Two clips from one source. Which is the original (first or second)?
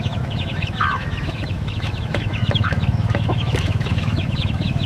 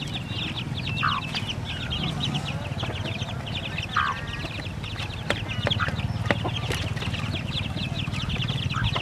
second